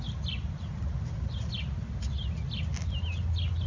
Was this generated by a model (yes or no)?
no